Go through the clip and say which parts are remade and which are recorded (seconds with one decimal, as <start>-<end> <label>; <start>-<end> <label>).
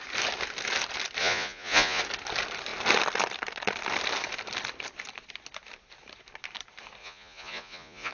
0.0-1.2 recorded; 1.2-2.0 remade; 2.0-7.0 recorded; 7.0-8.1 remade